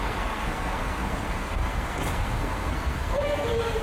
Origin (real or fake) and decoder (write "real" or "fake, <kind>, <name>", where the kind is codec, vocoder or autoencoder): fake, codec, SNAC